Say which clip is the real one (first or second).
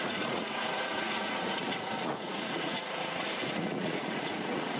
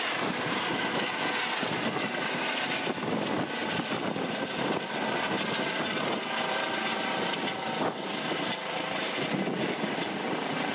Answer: second